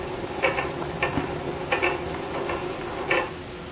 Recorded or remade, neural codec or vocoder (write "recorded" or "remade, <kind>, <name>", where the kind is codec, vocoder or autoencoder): recorded